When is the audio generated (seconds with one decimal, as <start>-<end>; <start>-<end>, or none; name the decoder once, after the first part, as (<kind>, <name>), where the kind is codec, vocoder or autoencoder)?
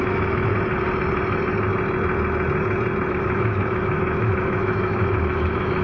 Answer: 0.0-0.5 (autoencoder, DAC-VAE); 3.1-5.8